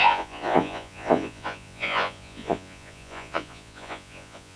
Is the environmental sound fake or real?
fake